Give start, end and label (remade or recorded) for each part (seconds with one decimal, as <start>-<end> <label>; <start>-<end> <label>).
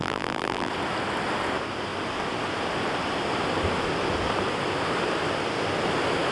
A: 0.0-0.7 remade; 0.7-6.3 recorded